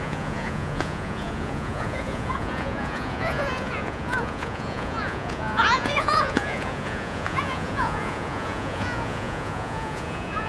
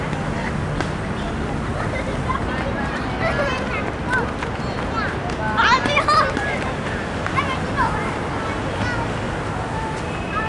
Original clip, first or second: second